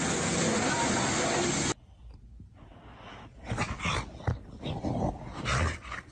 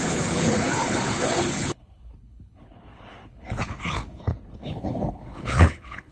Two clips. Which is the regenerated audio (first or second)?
second